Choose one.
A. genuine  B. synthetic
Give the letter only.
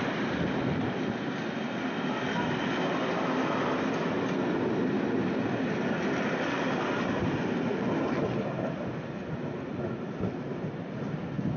A